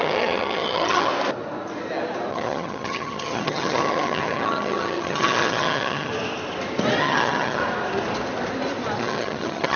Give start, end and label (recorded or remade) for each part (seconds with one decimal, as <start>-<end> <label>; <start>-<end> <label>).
0.0-1.1 remade; 1.1-2.3 recorded; 2.3-6.1 remade; 6.1-7.0 recorded; 7.0-7.6 remade; 7.6-9.0 recorded; 9.0-9.8 remade